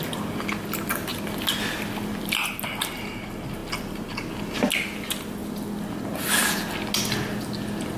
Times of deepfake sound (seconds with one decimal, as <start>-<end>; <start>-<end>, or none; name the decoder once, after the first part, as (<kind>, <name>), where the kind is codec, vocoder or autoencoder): none